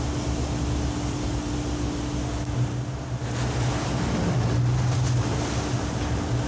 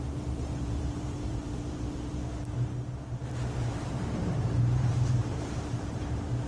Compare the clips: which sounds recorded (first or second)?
first